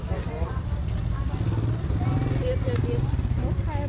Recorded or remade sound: recorded